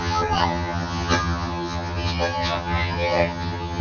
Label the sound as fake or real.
fake